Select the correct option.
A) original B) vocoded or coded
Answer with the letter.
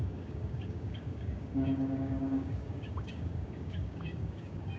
B